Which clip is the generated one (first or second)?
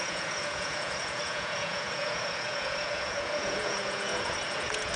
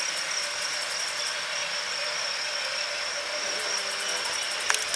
first